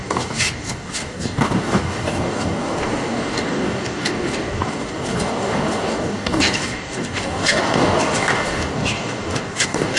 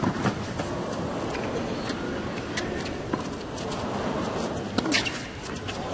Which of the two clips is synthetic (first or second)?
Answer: first